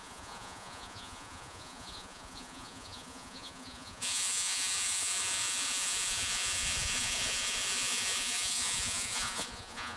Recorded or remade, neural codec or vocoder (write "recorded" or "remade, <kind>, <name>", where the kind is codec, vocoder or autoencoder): remade, vocoder, Vocos